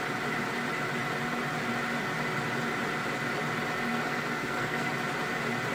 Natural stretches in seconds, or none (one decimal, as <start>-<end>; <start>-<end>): 0.0-3.9; 4.9-5.7